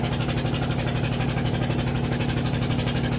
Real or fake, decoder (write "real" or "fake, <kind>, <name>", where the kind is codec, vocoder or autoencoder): real